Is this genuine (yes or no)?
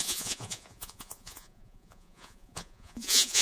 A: no